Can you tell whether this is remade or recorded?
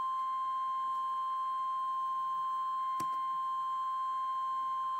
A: recorded